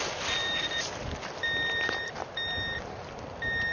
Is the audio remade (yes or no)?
no